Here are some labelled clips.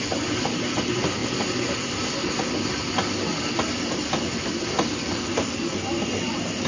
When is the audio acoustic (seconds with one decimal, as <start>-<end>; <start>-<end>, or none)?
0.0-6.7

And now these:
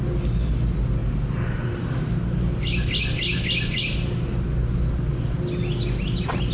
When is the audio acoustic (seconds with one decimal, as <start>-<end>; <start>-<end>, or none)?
0.0-6.5

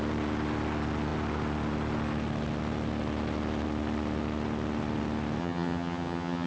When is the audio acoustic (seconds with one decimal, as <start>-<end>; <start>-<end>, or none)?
0.0-5.4

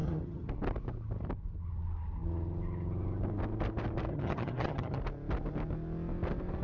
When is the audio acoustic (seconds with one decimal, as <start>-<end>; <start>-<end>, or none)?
0.5-4.1; 5.0-6.6

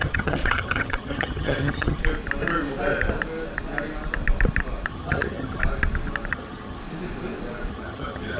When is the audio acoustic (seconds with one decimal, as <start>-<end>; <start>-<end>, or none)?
2.0-4.9; 5.6-6.3; 6.8-7.7

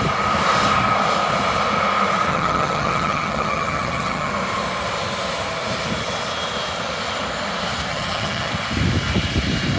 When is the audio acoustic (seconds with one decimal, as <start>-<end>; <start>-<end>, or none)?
0.0-2.3; 4.3-7.9; 8.5-9.8

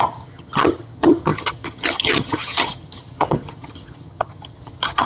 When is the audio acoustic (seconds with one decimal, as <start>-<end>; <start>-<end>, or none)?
none

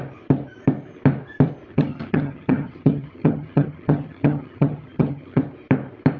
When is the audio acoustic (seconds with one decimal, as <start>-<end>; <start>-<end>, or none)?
0.0-1.7; 5.4-6.2